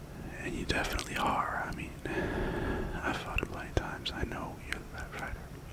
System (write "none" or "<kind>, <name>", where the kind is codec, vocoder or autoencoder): none